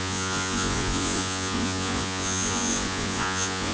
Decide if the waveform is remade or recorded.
remade